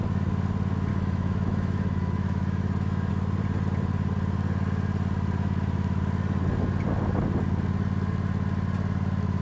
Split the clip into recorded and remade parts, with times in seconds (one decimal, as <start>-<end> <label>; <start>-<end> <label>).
0.0-0.9 recorded; 0.9-3.1 remade; 3.1-9.4 recorded